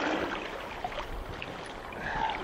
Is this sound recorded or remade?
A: recorded